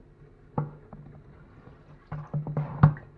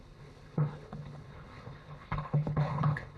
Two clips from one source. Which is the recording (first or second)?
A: first